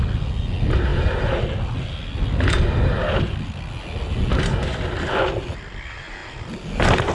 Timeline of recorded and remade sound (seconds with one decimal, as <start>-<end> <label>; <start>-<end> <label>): 0.0-7.1 recorded